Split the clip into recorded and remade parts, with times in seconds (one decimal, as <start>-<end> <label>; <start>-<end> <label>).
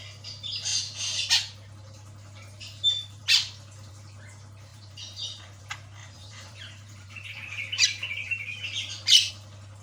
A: 0.0-0.7 recorded; 0.7-1.3 remade; 1.3-4.7 recorded; 4.7-5.6 remade; 5.6-6.0 recorded; 6.0-9.3 remade; 9.3-9.8 recorded